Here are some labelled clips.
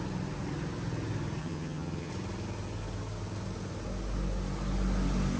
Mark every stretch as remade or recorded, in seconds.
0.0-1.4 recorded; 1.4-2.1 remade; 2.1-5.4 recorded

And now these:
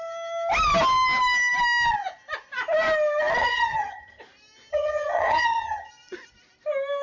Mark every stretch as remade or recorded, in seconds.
0.0-3.4 recorded; 3.4-4.2 remade; 4.2-4.7 recorded; 4.7-5.9 remade; 5.9-7.0 recorded

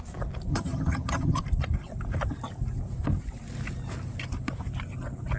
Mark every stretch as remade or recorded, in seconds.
0.0-0.5 recorded; 0.5-1.4 remade; 1.4-5.4 recorded

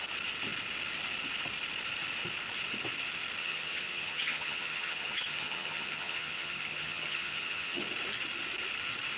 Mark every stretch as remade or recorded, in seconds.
0.0-3.4 recorded; 3.4-7.8 remade; 7.8-9.2 recorded

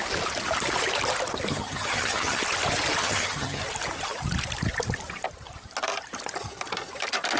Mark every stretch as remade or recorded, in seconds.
0.0-1.5 recorded; 1.5-2.4 remade; 2.4-3.0 recorded; 3.0-3.6 remade; 3.6-7.4 recorded

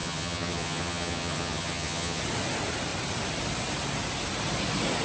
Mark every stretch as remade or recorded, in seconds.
0.0-2.2 remade; 2.2-5.0 recorded

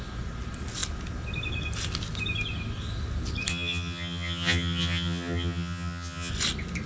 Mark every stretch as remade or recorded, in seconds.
0.0-3.5 recorded; 3.5-6.3 remade; 6.3-6.9 recorded

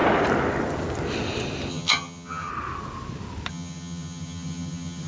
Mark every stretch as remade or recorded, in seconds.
0.0-1.7 recorded; 1.7-2.5 remade; 2.5-3.5 recorded; 3.5-5.1 remade